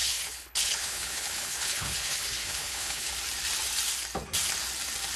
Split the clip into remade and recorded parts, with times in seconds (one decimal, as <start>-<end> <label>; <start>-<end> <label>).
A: 0.0-3.1 remade; 3.1-5.2 recorded